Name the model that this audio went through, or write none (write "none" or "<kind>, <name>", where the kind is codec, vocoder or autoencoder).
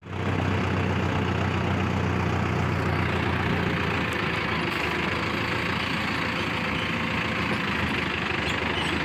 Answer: none